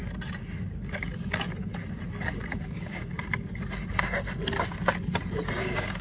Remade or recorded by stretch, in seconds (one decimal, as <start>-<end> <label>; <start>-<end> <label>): 0.0-2.5 recorded; 2.5-3.1 remade; 3.1-5.6 recorded; 5.6-6.0 remade